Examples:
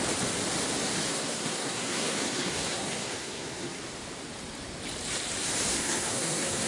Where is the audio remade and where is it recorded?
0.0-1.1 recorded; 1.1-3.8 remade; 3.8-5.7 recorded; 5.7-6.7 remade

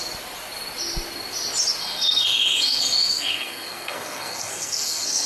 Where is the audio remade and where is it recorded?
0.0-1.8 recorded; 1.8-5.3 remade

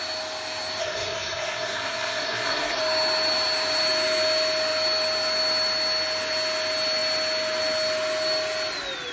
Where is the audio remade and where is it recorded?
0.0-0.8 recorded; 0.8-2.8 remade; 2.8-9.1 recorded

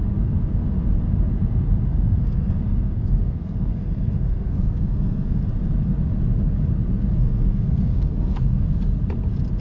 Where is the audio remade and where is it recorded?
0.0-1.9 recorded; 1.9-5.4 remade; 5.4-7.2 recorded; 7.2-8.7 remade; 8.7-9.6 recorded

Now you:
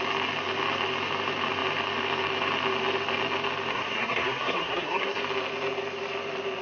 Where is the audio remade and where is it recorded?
0.0-3.7 recorded; 3.7-5.2 remade; 5.2-6.6 recorded

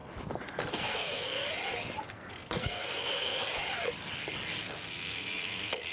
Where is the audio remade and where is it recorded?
0.0-0.7 recorded; 0.7-1.4 remade; 1.4-2.1 recorded; 2.1-3.3 remade; 3.3-4.6 recorded; 4.6-5.9 remade

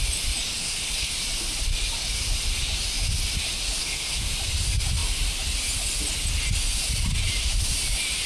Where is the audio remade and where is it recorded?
0.0-0.6 recorded; 0.6-1.1 remade; 1.1-3.8 recorded; 3.8-4.3 remade; 4.3-8.3 recorded